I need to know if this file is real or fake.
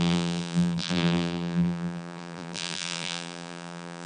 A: fake